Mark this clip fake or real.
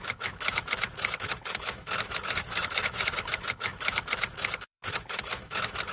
fake